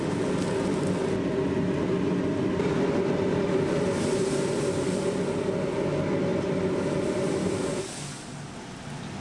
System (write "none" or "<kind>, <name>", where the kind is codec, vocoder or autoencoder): none